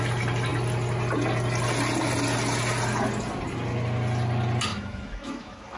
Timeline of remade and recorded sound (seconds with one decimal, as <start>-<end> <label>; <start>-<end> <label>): 0.0-4.7 recorded; 4.7-5.8 remade